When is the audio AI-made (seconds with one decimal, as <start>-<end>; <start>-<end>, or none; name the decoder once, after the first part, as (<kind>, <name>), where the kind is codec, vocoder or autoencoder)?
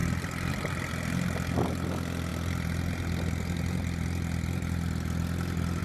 none